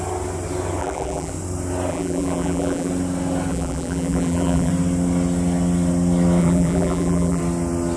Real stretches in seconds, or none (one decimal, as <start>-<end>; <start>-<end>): 0.0-0.8; 1.3-1.9; 2.9-3.5; 4.7-6.4; 7.4-8.0